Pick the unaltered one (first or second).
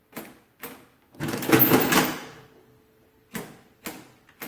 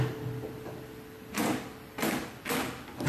first